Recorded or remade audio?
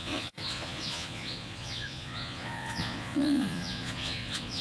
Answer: remade